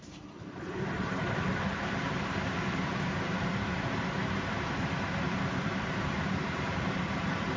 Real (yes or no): no